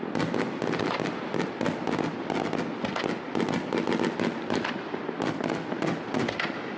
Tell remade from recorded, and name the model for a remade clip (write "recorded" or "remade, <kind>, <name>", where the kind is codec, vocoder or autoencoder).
recorded